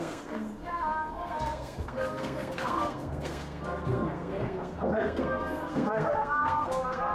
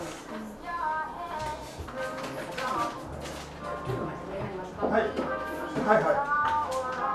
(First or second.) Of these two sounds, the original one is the second